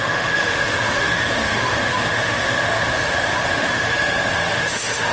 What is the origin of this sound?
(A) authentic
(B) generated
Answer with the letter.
B